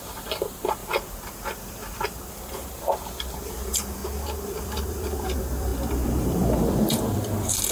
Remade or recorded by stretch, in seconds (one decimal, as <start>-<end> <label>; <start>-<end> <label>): 0.0-0.8 remade; 0.8-2.7 recorded; 2.7-4.0 remade; 4.0-4.6 recorded; 4.6-7.7 remade